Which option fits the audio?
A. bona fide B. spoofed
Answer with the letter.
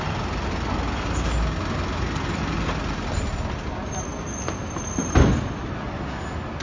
A